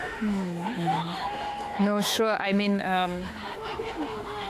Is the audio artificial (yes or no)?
yes